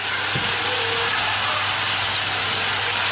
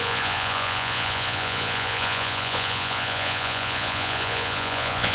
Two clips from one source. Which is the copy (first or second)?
second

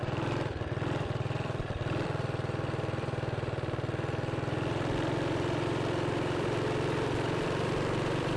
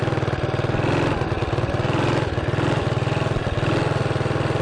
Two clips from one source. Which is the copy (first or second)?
first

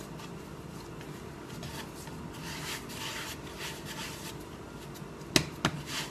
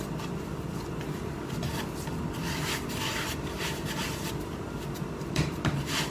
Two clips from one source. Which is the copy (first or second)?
second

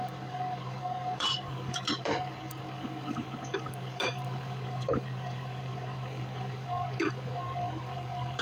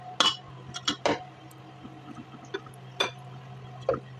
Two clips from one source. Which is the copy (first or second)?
first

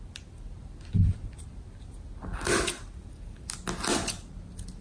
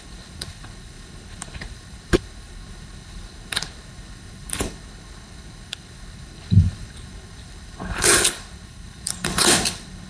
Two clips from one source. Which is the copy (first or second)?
second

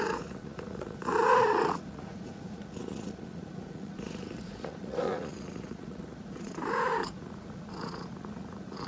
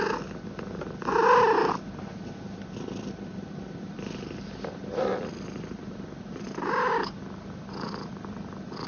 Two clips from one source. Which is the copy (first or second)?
first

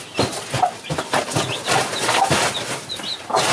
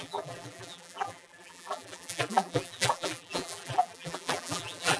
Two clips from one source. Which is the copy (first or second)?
second